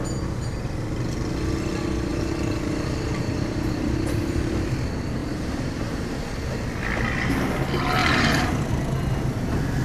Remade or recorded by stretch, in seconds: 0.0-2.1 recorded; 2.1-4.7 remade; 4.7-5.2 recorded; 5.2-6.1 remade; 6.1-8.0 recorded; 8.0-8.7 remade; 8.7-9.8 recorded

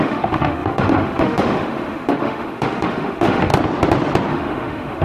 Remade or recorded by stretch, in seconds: 0.0-3.5 remade; 3.5-4.3 recorded; 4.3-5.0 remade

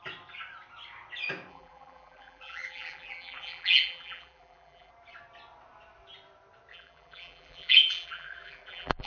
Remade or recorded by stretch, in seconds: 0.0-1.5 recorded; 1.5-4.9 remade; 4.9-6.7 recorded; 6.7-9.1 remade

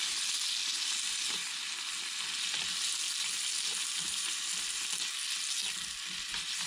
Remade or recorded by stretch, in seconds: 0.0-3.9 recorded; 3.9-4.7 remade; 4.7-5.6 recorded; 5.6-6.7 remade